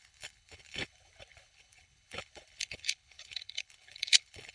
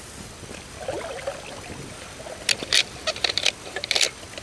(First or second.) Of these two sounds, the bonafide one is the second